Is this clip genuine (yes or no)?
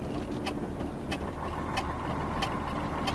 yes